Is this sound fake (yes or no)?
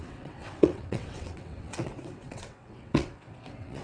yes